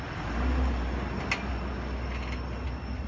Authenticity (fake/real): real